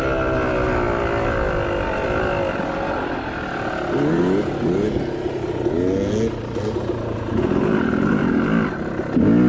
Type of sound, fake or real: real